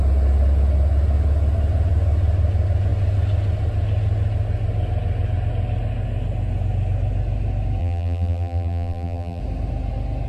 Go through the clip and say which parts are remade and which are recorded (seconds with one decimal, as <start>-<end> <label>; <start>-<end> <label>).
0.0-7.8 recorded; 7.8-9.4 remade; 9.4-10.3 recorded